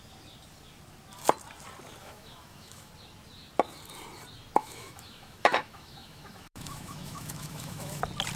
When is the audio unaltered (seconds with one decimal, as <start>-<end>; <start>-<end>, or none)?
0.0-2.0; 2.9-4.6; 8.0-8.4